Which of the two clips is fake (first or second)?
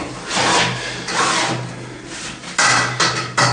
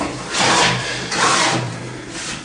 second